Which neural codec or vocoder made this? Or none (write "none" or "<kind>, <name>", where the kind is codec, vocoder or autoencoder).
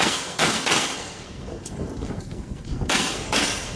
codec, SNAC